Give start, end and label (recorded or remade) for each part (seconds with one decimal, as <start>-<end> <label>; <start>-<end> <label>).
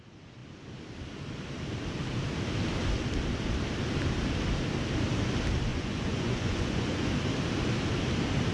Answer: 0.0-5.7 recorded; 5.7-7.1 remade; 7.1-8.5 recorded